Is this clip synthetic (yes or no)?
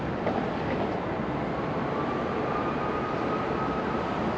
no